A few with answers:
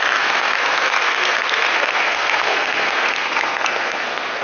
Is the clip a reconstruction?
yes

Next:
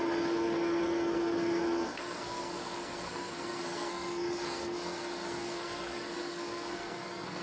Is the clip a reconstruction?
yes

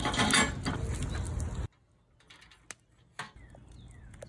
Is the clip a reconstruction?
no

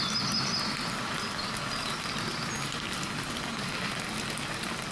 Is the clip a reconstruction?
no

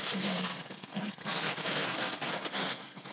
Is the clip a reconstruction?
yes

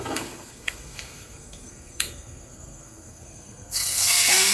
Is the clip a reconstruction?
yes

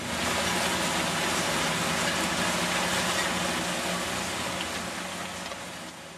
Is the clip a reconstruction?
no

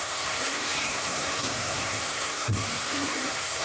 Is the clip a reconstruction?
yes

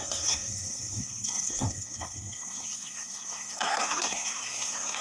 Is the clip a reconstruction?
yes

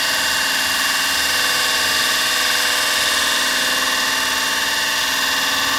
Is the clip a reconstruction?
no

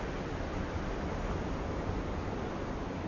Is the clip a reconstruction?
no